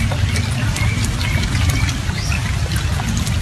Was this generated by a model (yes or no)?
no